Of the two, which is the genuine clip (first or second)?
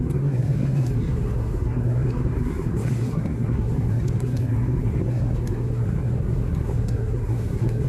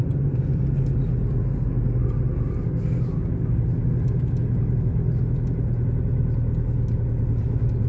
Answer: second